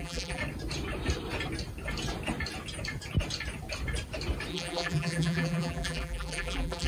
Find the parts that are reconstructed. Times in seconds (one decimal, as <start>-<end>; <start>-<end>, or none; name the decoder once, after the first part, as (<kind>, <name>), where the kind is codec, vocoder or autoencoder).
0.0-0.4 (vocoder, BigVGAN v2); 4.5-6.9